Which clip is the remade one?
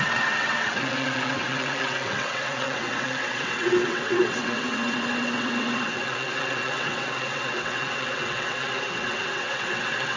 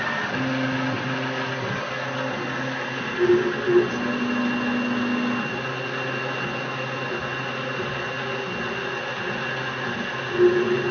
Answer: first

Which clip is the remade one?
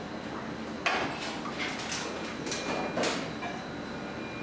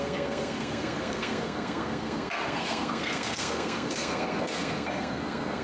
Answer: second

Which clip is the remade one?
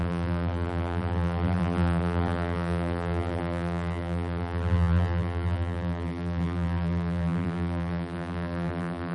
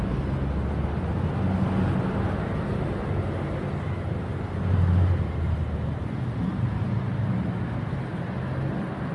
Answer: first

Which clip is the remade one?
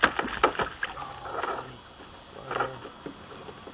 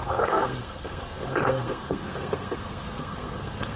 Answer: second